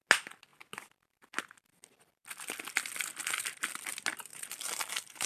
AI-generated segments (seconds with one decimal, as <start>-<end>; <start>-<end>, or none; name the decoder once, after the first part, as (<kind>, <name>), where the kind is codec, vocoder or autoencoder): 4.3-5.3 (vocoder, BigVGAN v2)